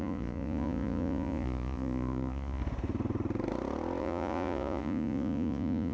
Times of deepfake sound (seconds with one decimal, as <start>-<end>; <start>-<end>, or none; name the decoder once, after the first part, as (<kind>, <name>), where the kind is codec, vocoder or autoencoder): 0.0-2.6 (vocoder, Vocos); 4.0-5.9